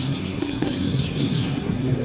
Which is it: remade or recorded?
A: remade